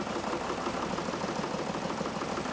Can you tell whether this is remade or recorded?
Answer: remade